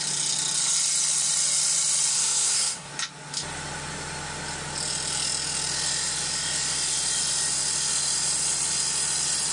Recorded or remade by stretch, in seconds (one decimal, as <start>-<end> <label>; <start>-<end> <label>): 0.0-2.1 recorded; 2.1-2.9 remade; 2.9-9.5 recorded